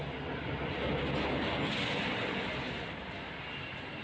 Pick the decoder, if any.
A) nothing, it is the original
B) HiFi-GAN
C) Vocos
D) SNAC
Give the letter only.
A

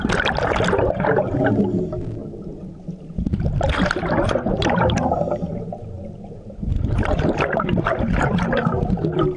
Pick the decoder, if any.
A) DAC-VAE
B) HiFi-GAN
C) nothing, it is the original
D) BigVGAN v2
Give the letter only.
C